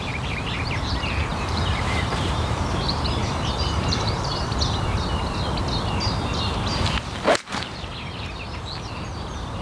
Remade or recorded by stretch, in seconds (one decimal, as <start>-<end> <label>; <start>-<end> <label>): 0.0-4.3 remade; 4.3-7.5 recorded; 7.5-9.6 remade